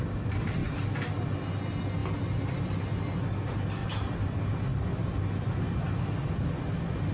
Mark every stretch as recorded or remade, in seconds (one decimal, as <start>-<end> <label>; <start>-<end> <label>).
0.0-7.1 recorded